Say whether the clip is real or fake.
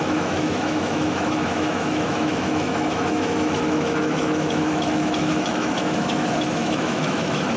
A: fake